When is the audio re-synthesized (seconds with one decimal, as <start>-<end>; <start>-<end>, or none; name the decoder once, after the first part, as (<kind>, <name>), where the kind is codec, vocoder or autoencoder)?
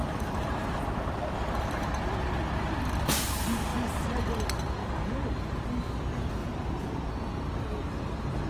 0.0-2.1 (vocoder, BigVGAN v2); 3.7-4.2; 4.8-5.7; 6.4-7.1